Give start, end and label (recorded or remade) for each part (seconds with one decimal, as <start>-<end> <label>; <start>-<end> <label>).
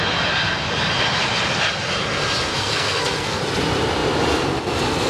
0.0-2.5 recorded; 2.5-3.4 remade; 3.4-5.1 recorded